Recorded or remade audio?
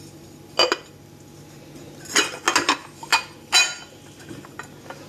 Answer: recorded